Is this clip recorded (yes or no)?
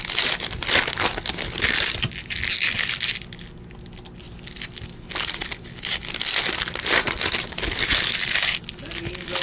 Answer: yes